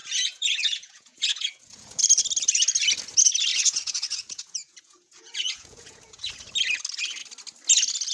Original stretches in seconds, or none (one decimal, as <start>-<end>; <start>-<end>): 2.0-3.5; 6.3-8.1